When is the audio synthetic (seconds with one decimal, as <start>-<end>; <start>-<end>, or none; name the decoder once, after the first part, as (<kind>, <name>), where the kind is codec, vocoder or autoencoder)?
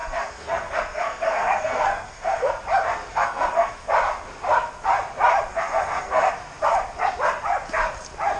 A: 0.0-2.5 (codec, SNAC); 3.1-3.7; 5.5-6.3